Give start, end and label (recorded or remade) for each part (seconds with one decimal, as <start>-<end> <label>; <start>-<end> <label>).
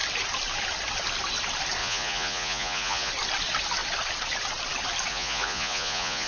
0.0-1.8 recorded; 1.8-3.1 remade; 3.1-5.1 recorded; 5.1-6.3 remade